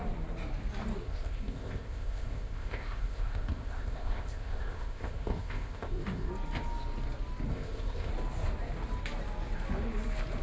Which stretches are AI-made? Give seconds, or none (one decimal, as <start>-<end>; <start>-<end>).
1.0-6.3; 7.5-8.1